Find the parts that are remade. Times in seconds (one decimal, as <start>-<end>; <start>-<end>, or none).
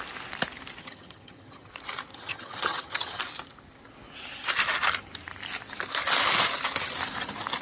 0.8-1.7; 2.1-3.2